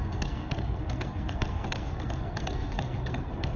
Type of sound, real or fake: fake